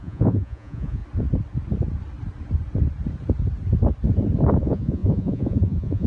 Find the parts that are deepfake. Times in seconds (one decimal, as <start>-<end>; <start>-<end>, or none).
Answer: 0.0-1.0; 4.6-6.1